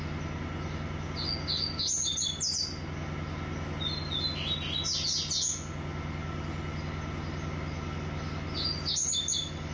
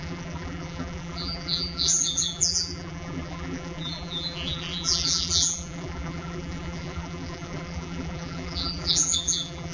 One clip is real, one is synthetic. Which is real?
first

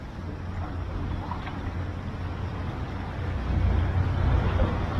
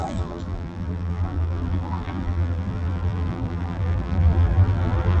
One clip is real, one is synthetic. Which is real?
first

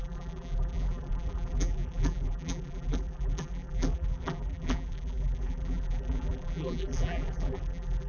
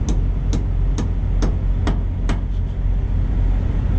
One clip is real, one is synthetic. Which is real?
second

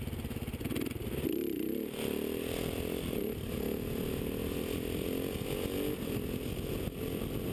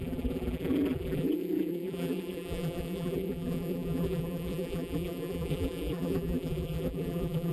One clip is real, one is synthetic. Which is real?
first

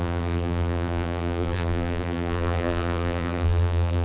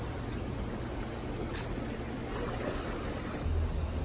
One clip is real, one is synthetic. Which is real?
second